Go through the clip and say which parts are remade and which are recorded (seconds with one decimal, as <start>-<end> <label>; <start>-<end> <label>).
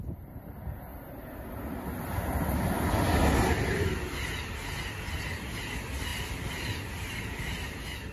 0.0-0.9 recorded; 0.9-1.7 remade; 1.7-6.1 recorded; 6.1-7.5 remade; 7.5-8.1 recorded